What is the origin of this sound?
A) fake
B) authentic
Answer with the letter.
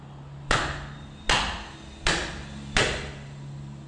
B